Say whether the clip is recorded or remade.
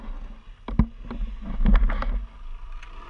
recorded